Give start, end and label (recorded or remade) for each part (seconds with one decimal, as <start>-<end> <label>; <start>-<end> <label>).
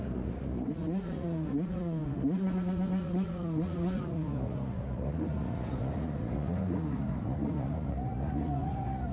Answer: 0.0-9.1 remade